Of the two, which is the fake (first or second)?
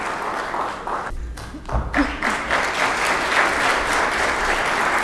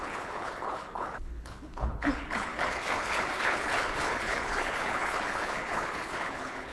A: second